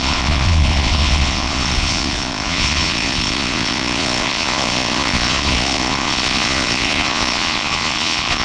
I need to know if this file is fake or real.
fake